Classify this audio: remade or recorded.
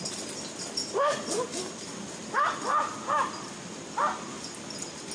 recorded